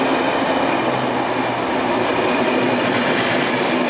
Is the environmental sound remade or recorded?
recorded